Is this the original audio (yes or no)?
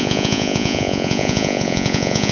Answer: no